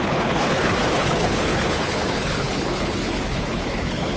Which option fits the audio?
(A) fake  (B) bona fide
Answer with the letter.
A